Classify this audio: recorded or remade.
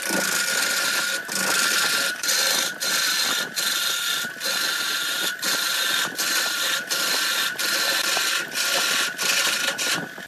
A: recorded